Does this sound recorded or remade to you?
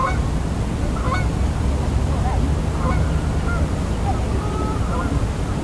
recorded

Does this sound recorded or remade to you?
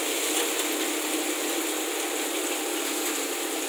recorded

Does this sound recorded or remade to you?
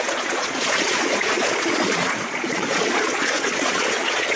remade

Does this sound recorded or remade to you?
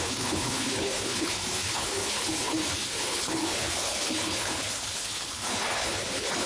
remade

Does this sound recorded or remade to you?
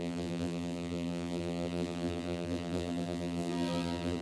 remade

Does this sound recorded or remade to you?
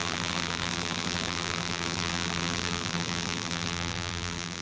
remade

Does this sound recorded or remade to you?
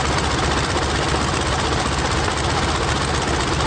recorded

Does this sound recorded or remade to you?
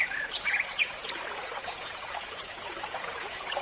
remade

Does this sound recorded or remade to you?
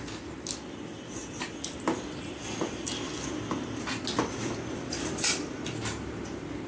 recorded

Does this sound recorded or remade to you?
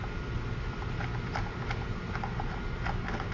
recorded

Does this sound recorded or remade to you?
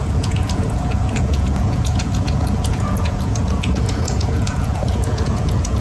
remade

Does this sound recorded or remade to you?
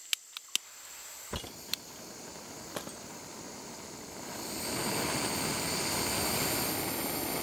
recorded